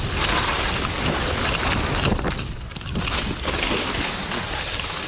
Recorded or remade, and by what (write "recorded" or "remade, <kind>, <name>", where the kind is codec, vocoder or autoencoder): recorded